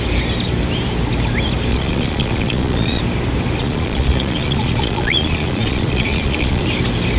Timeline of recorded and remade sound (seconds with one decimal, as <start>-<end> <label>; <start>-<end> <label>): 0.0-1.7 recorded; 1.7-3.0 remade; 3.0-3.6 recorded; 3.6-6.7 remade; 6.7-7.2 recorded